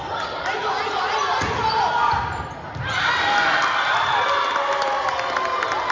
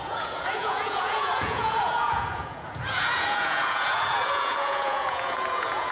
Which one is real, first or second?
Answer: first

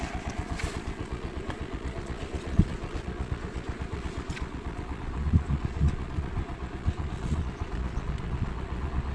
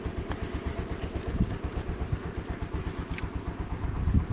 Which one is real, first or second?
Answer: second